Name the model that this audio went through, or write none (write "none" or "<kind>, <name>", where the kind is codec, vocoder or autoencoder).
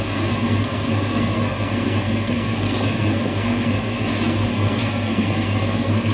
codec, SNAC